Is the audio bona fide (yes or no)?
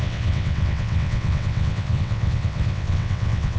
no